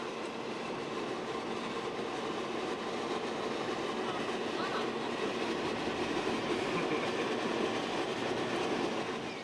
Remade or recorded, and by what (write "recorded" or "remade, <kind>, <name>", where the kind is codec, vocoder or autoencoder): recorded